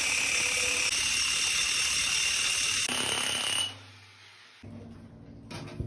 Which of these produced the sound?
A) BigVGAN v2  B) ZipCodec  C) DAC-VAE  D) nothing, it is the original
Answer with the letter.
D